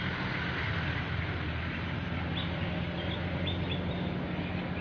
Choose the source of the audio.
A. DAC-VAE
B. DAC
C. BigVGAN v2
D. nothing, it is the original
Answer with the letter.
D